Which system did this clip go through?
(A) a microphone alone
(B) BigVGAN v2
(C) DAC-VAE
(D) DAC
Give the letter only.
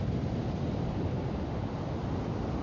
A